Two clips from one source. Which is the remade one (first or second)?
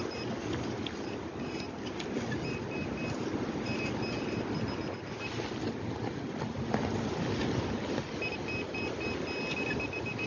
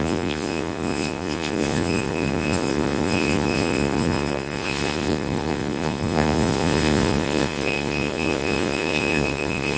second